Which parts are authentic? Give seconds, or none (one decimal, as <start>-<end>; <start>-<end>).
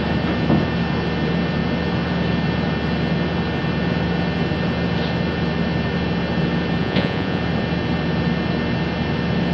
0.0-6.8; 7.4-9.5